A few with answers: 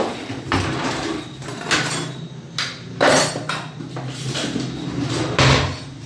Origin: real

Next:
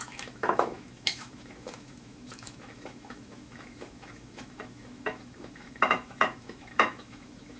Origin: fake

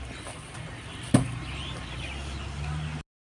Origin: real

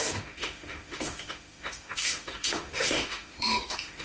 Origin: fake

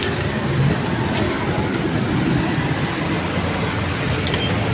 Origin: real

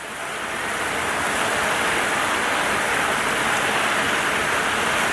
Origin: real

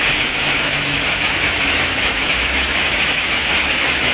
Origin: fake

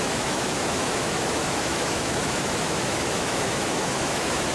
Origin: fake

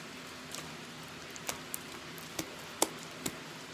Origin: real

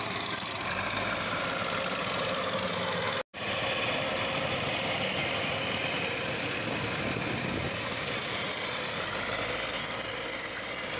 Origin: real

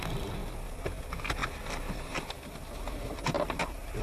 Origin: real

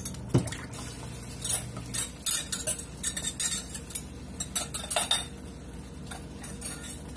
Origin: real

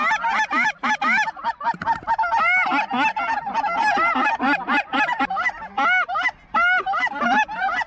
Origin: real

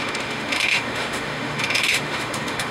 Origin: fake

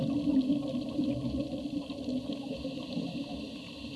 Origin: real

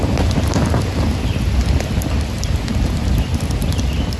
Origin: real